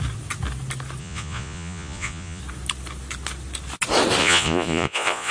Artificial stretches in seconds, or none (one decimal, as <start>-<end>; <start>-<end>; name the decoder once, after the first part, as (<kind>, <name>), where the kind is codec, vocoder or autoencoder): 1.0-2.4 (vocoder, Vocos); 4.2-5.3